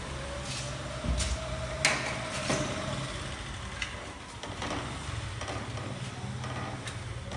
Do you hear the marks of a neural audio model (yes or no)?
no